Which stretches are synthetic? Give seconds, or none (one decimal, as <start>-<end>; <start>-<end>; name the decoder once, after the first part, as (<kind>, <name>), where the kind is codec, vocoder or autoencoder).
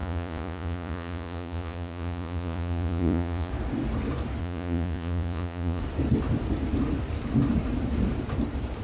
0.0-3.5 (vocoder, Vocos); 4.4-5.8